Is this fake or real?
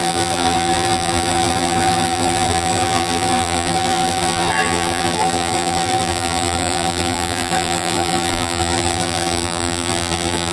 fake